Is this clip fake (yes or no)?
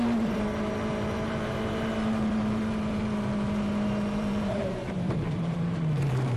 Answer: yes